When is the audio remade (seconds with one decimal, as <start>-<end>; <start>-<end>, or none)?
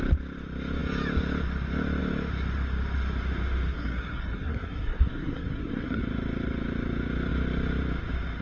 3.7-6.0